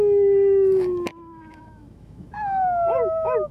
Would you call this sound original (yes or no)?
no